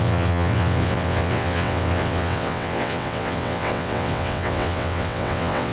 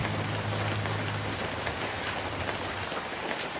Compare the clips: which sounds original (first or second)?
second